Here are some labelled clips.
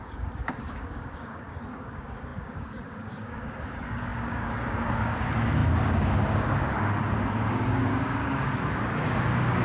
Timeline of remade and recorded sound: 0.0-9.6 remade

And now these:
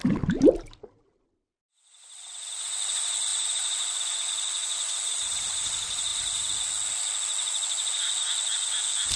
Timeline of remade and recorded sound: 0.0-9.2 recorded

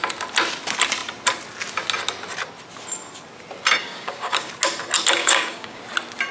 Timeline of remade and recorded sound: 0.0-3.8 recorded; 3.8-4.5 remade; 4.5-5.2 recorded; 5.2-5.8 remade; 5.8-6.3 recorded